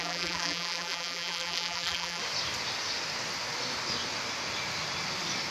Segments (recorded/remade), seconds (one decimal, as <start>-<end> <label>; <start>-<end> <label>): 0.0-2.2 remade; 2.2-5.5 recorded

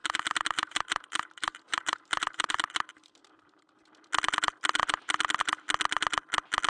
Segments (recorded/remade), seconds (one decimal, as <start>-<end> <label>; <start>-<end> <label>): 0.0-3.8 remade; 3.8-6.7 recorded

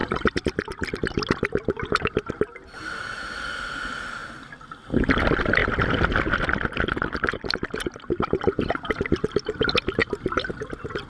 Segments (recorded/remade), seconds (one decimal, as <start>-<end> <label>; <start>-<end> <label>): 0.0-2.3 remade; 2.3-4.2 recorded; 4.2-4.8 remade; 4.8-11.1 recorded